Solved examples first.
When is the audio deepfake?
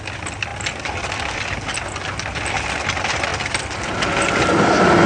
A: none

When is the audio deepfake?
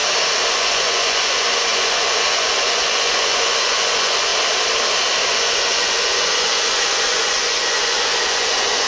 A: 0.5-4.3; 5.3-8.9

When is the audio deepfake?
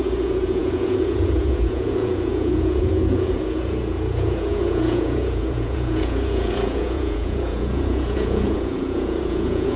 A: 0.0-9.8